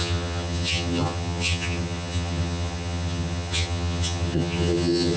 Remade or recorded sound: remade